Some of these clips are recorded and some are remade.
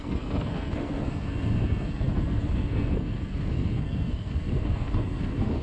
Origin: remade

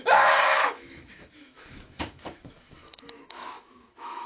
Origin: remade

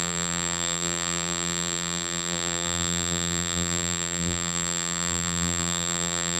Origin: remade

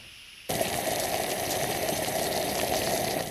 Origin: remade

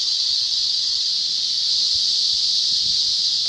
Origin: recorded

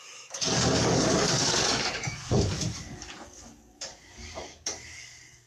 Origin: remade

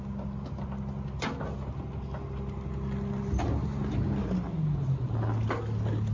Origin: recorded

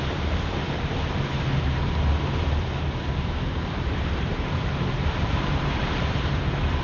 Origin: remade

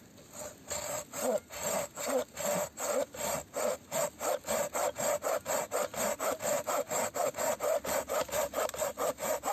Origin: recorded